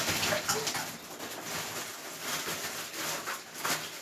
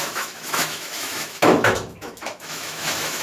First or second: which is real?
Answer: first